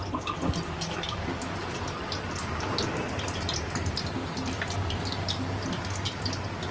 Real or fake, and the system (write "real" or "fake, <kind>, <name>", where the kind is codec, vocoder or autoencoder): real